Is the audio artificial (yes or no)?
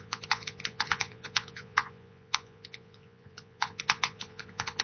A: yes